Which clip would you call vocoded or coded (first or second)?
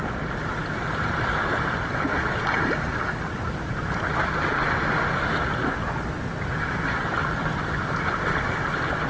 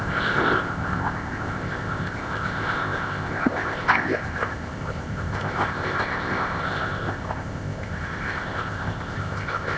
second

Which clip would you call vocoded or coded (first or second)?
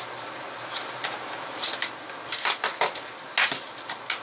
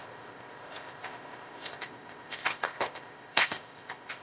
second